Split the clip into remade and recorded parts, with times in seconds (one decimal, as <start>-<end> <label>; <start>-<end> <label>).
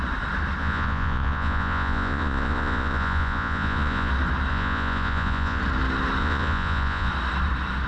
0.0-0.6 recorded; 0.6-4.1 remade; 4.1-4.5 recorded; 4.5-5.6 remade; 5.6-6.2 recorded; 6.2-7.1 remade; 7.1-7.9 recorded